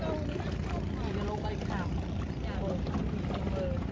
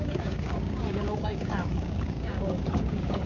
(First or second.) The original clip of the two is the first